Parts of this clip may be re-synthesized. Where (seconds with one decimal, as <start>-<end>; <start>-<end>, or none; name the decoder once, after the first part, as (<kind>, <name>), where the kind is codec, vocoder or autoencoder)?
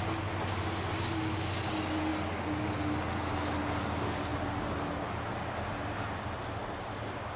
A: none